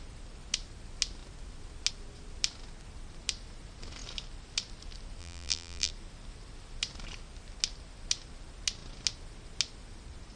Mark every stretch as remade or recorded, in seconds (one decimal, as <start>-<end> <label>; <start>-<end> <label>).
0.0-5.2 recorded; 5.2-5.9 remade; 5.9-10.4 recorded